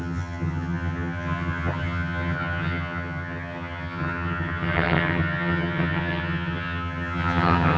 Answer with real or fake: fake